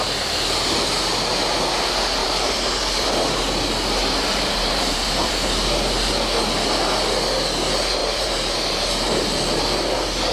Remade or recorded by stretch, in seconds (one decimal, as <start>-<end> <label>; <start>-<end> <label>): 0.0-2.2 recorded; 2.2-3.4 remade; 3.4-4.0 recorded; 4.0-5.3 remade; 5.3-8.0 recorded; 8.0-9.6 remade; 9.6-10.3 recorded